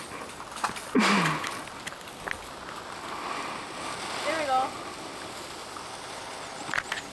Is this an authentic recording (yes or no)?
yes